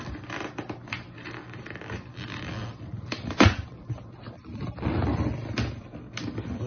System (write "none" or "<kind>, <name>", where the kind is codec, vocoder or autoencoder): none